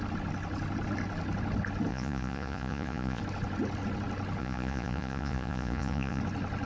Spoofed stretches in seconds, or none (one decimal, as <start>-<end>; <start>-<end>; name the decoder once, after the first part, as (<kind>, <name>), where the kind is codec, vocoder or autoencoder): 1.9-3.2 (vocoder, Vocos); 4.4-6.2